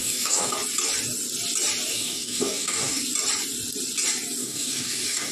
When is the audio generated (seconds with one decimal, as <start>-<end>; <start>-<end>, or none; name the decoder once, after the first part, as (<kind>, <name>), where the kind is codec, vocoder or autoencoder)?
0.0-0.5 (codec, DAC); 1.9-3.0; 4.4-5.3